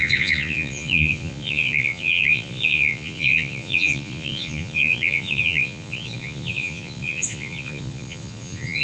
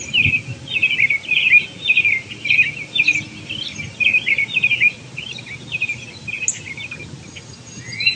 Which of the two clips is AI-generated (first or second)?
first